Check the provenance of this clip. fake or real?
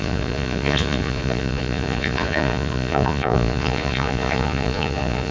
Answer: fake